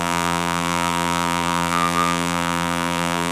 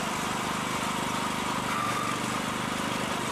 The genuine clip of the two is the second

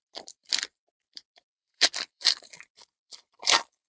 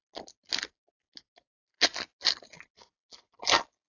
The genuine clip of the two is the second